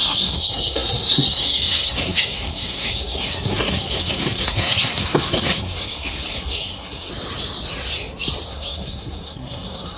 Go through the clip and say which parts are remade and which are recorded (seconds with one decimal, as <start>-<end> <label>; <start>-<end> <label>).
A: 0.0-7.1 remade; 7.1-8.5 recorded; 8.5-10.0 remade